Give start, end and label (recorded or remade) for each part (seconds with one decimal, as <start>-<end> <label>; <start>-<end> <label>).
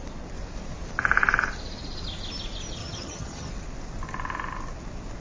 0.0-2.8 recorded; 2.8-3.5 remade; 3.5-5.2 recorded